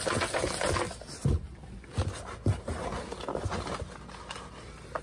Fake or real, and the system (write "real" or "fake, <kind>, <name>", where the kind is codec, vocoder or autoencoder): real